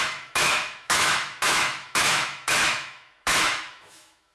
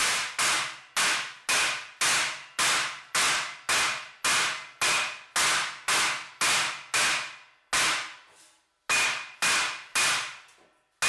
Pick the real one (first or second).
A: second